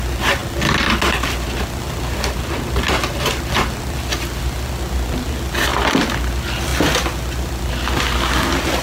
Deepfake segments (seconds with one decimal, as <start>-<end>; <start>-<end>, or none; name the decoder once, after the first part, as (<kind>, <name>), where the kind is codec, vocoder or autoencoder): none